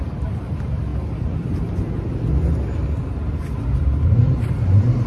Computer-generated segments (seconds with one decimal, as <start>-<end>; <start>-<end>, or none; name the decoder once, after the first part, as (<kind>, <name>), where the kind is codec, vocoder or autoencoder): 0.0-0.9 (vocoder, BigVGAN v2); 4.0-5.1